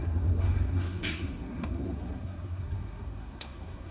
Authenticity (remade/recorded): remade